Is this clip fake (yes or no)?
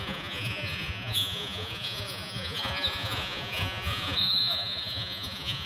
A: yes